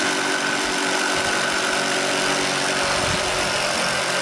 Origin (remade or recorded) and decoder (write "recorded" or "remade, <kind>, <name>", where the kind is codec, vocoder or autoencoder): recorded